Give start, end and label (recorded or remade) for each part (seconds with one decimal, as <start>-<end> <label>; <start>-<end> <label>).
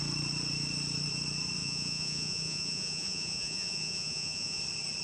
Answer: 0.0-1.6 recorded; 1.6-4.6 remade; 4.6-5.0 recorded